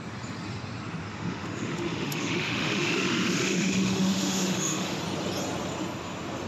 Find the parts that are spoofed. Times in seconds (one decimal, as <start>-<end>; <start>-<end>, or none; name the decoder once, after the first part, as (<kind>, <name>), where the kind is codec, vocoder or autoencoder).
1.1-5.0 (autoencoder, DAC-VAE)